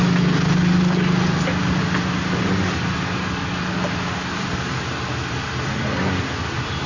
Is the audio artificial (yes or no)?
no